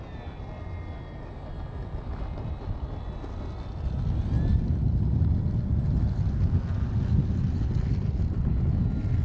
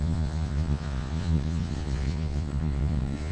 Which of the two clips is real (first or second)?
first